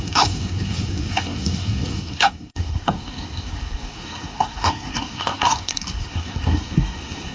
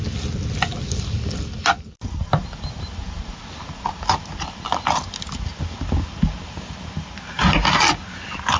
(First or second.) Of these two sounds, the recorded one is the second